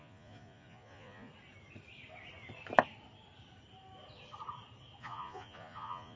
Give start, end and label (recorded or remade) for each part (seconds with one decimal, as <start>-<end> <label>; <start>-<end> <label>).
0.0-1.3 remade; 1.3-5.0 recorded; 5.0-6.2 remade